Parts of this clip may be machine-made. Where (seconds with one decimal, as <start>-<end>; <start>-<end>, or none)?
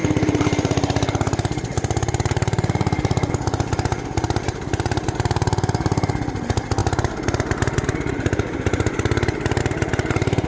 0.0-3.3; 3.9-6.1; 6.8-9.6